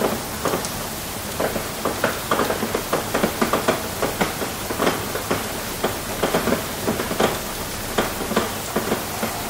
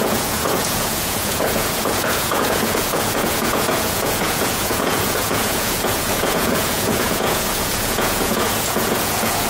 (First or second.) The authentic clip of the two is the first